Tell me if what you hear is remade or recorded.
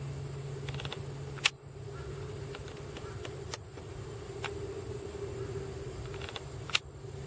recorded